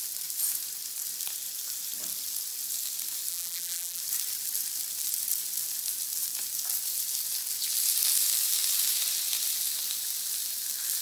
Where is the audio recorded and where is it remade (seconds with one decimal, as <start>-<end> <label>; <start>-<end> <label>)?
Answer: 0.0-3.3 recorded; 3.3-4.0 remade; 4.0-11.0 recorded